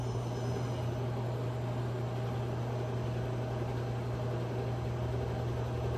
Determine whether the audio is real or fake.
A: real